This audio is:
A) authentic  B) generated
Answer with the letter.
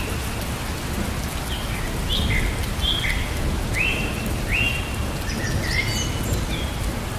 A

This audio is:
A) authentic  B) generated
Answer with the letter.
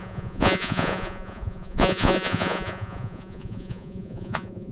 B